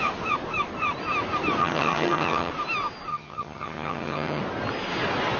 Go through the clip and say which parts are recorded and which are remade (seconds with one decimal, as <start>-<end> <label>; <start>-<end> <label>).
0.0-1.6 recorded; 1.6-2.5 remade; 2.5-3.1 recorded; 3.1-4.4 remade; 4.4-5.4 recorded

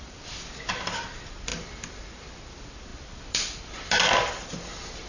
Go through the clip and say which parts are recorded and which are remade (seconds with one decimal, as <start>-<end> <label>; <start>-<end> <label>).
0.0-1.5 remade; 1.5-2.5 recorded; 2.5-5.1 remade

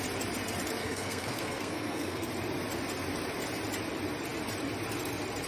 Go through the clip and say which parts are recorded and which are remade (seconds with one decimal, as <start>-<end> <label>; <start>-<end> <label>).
0.0-0.8 recorded; 0.8-2.3 remade; 2.3-5.5 recorded

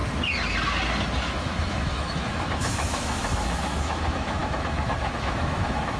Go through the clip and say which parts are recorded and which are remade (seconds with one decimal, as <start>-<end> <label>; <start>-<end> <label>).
0.0-1.2 recorded; 1.2-6.0 remade

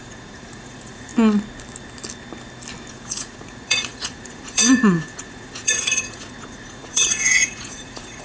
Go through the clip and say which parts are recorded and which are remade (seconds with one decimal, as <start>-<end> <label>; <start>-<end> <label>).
0.0-1.1 remade; 1.1-2.9 recorded; 2.9-8.2 remade

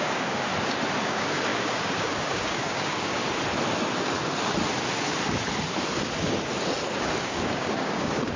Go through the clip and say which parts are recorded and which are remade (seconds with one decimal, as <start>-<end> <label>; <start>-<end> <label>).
0.0-0.5 remade; 0.5-1.0 recorded; 1.0-3.2 remade; 3.2-7.2 recorded; 7.2-8.4 remade